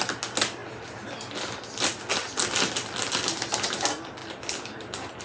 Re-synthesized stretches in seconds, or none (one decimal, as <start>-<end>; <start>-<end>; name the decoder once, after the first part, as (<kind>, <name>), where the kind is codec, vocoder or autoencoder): none